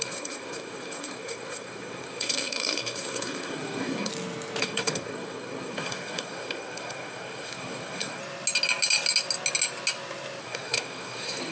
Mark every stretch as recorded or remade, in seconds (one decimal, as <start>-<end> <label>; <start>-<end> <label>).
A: 0.0-4.1 remade; 4.1-4.6 recorded; 4.6-8.2 remade; 8.2-10.4 recorded; 10.4-11.5 remade